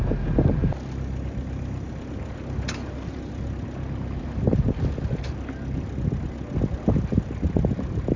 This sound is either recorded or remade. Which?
recorded